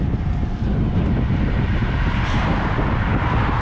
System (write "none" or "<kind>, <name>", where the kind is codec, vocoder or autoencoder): none